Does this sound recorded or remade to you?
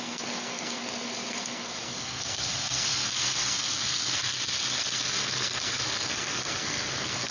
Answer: remade